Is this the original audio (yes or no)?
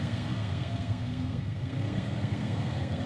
no